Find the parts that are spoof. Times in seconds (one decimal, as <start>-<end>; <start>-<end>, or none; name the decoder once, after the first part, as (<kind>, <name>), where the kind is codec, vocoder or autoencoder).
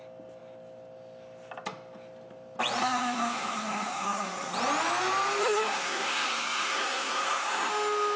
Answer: 2.8-4.5 (codec, SNAC); 5.4-7.7